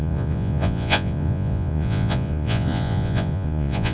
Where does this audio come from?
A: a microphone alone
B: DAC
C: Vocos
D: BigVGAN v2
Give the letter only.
C